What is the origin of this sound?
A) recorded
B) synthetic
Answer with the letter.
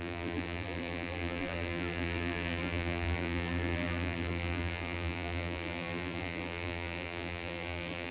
B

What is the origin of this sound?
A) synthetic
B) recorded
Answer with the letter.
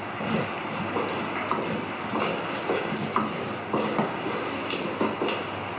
B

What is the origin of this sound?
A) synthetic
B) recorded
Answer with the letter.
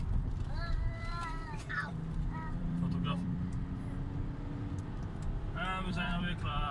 A